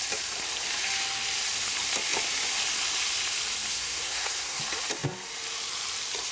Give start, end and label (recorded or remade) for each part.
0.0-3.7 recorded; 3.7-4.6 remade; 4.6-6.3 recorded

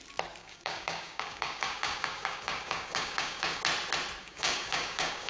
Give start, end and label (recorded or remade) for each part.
0.0-0.4 recorded; 0.4-3.6 remade; 3.6-4.2 recorded; 4.2-5.3 remade

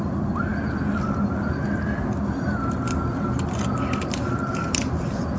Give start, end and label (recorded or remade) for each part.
0.0-5.4 recorded

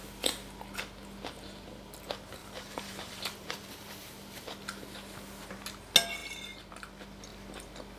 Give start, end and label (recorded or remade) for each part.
0.0-2.4 recorded; 2.4-3.9 remade; 3.9-8.0 recorded

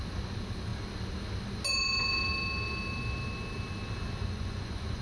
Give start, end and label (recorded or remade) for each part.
0.0-4.2 recorded; 4.2-5.0 remade

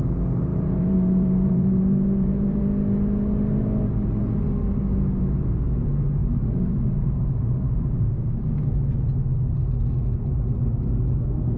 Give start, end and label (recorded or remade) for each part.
0.0-0.5 recorded; 0.5-2.6 remade; 2.6-6.2 recorded; 6.2-8.4 remade; 8.4-11.6 recorded

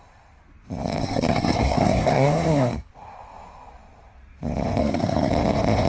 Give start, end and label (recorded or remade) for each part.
0.0-1.0 recorded; 1.0-2.9 remade; 2.9-4.8 recorded; 4.8-5.3 remade; 5.3-5.9 recorded